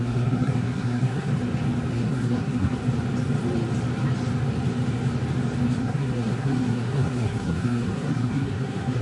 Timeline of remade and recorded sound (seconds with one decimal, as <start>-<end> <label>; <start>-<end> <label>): 0.0-1.3 remade; 1.3-1.9 recorded; 1.9-2.8 remade; 2.8-5.8 recorded; 5.8-9.0 remade